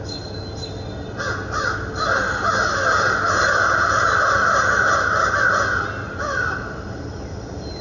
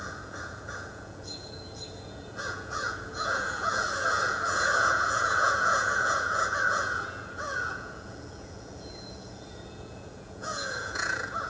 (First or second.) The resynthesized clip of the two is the second